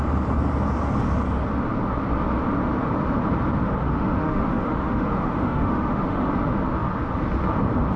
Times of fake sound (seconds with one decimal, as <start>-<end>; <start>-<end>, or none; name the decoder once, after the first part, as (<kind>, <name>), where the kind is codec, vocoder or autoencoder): 3.6-6.3 (autoencoder, DAC-VAE)